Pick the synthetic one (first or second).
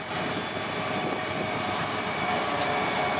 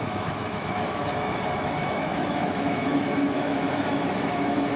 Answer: second